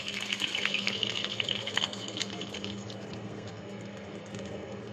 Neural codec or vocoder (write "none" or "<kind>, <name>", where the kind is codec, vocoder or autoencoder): codec, SNAC